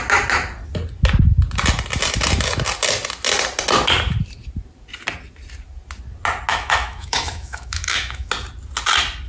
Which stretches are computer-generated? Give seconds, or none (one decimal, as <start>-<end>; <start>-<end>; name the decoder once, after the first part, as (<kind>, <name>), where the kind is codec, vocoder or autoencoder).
6.5-8.3 (autoencoder, DAC-VAE)